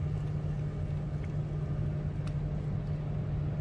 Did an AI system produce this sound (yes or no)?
no